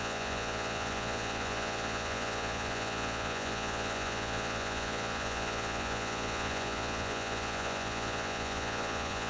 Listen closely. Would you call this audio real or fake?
fake